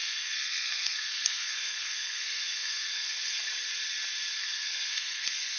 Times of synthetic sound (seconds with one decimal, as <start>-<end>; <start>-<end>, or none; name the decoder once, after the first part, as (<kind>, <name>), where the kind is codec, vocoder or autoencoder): 0.0-3.4 (codec, SNAC); 4.4-5.6